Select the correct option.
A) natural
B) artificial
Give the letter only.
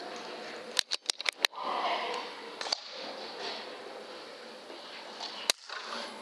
A